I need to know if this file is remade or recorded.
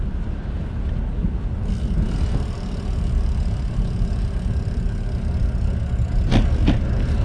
recorded